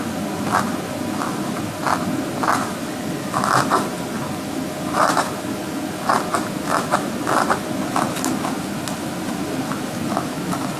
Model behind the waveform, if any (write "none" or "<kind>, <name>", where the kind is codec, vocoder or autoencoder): none